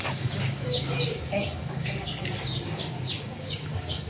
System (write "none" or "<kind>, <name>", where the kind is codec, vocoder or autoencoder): codec, DAC